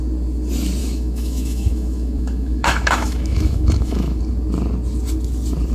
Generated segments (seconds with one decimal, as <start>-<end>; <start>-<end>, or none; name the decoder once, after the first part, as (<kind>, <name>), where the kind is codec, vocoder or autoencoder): 0.8-4.2 (autoencoder, DAC-VAE)